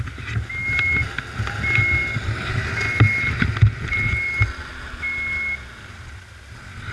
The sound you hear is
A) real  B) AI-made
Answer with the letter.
A